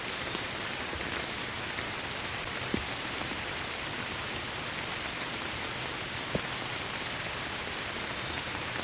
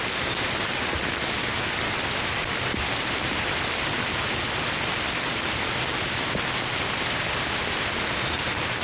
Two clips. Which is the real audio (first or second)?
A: second